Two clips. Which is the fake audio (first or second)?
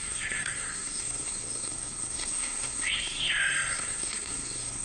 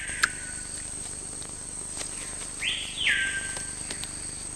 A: first